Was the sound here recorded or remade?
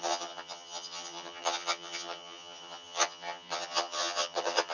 remade